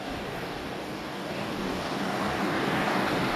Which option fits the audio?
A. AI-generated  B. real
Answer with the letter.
A